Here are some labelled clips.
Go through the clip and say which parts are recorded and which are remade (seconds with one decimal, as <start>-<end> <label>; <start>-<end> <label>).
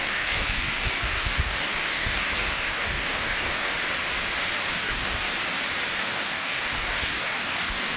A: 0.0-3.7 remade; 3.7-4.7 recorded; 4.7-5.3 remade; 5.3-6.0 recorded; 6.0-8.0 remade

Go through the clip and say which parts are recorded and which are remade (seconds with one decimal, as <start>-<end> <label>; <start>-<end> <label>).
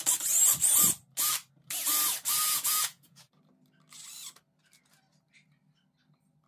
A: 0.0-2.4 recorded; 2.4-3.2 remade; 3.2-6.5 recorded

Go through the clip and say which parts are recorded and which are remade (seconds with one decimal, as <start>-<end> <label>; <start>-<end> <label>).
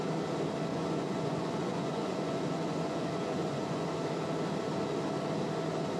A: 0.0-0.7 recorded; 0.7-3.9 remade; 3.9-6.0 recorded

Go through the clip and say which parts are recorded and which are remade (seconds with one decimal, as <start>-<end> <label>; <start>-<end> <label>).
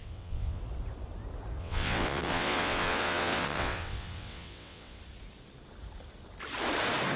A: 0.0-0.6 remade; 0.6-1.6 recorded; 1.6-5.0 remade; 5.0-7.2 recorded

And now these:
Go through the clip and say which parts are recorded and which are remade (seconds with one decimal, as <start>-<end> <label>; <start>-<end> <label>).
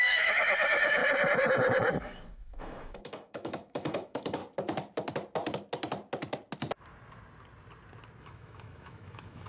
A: 0.0-1.0 remade; 1.0-2.0 recorded; 2.0-4.4 remade; 4.4-8.2 recorded; 8.2-9.5 remade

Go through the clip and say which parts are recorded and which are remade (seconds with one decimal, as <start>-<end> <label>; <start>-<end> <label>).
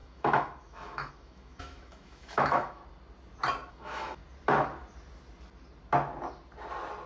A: 0.0-2.8 remade; 2.8-3.7 recorded; 3.7-4.2 remade; 4.2-7.1 recorded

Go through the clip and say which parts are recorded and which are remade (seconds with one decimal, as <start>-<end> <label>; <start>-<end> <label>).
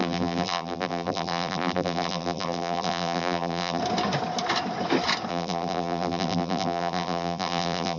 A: 0.0-3.8 remade; 3.8-5.3 recorded; 5.3-8.0 remade